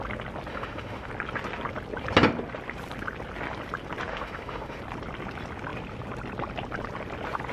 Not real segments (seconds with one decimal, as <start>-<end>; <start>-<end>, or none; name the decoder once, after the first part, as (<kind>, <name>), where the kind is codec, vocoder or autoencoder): 0.5-1.1 (autoencoder, DAC-VAE); 4.1-4.8